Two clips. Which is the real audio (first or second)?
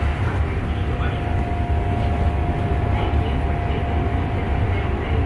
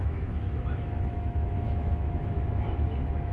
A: first